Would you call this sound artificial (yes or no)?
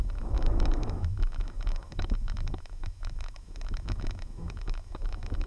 yes